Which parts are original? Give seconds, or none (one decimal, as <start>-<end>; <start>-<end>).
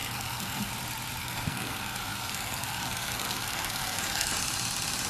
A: 0.7-1.2; 4.3-5.1